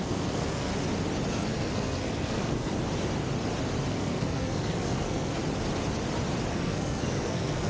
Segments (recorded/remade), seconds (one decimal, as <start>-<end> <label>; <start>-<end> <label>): 0.0-0.7 remade; 0.7-1.3 recorded; 1.3-2.7 remade; 2.7-3.9 recorded; 3.9-5.4 remade; 5.4-6.5 recorded; 6.5-7.7 remade

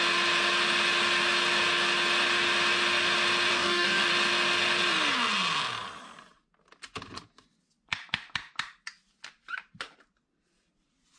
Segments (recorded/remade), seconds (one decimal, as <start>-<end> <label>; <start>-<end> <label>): 0.0-3.5 recorded; 3.5-4.1 remade; 4.1-11.2 recorded